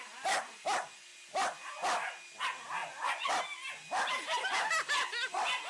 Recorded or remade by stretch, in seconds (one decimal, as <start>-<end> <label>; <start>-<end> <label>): 0.0-2.8 recorded; 2.8-3.3 remade; 3.3-5.7 recorded